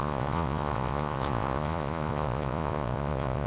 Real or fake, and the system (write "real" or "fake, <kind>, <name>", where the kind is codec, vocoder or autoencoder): fake, vocoder, Vocos